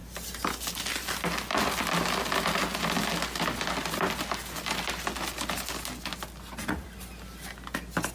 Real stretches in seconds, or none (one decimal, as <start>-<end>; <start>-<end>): 0.0-8.1